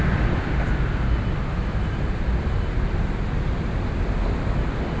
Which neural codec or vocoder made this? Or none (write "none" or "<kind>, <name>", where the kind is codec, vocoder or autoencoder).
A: none